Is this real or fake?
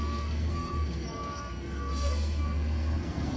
fake